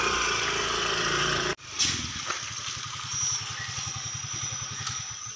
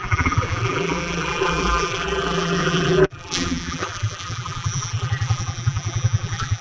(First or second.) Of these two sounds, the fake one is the second